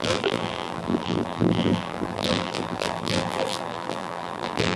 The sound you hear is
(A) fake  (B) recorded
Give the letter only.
A